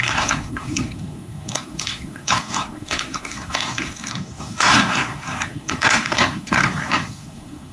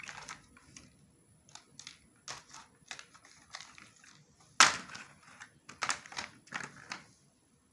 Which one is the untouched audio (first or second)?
second